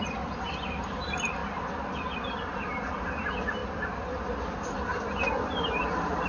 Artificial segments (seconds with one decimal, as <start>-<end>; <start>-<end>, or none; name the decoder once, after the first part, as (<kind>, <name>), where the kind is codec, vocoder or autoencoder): 0.0-1.4 (vocoder, BigVGAN v2); 2.9-3.6; 4.1-4.9; 5.6-6.3